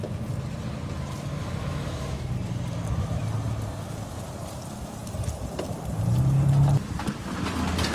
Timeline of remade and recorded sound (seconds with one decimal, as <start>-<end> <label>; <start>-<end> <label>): 0.0-1.4 recorded; 1.4-2.2 remade; 2.2-7.9 recorded